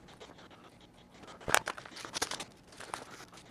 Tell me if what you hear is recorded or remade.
recorded